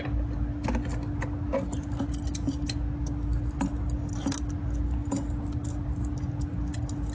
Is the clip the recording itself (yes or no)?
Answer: yes